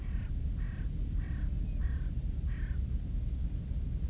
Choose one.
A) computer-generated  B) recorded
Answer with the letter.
B